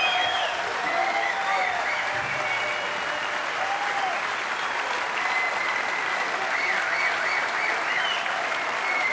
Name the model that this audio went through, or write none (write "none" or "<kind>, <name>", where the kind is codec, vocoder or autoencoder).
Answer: none